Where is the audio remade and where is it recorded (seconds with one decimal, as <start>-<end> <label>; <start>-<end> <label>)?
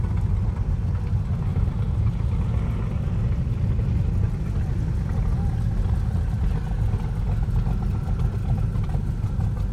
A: 0.0-9.7 recorded